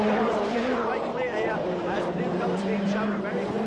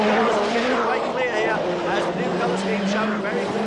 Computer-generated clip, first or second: first